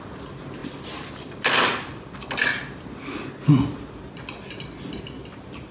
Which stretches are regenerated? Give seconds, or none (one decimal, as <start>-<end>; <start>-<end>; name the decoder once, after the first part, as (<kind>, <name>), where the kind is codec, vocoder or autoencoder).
none